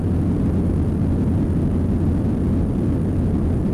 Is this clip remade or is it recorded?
recorded